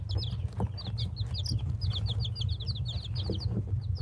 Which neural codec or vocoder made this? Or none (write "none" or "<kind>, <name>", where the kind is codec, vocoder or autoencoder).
none